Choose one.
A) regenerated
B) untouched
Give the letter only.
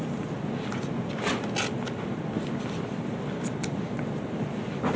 B